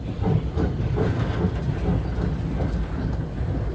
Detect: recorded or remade recorded